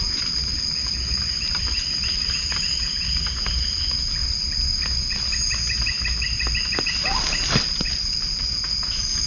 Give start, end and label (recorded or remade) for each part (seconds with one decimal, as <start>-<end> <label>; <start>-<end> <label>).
0.0-9.3 recorded